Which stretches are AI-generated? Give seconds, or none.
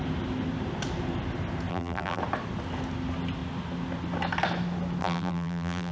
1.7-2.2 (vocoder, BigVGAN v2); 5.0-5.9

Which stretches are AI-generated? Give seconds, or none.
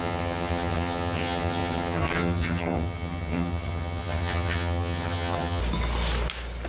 0.0-5.6 (vocoder, HiFi-GAN)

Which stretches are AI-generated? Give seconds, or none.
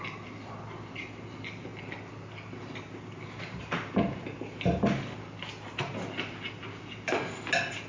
none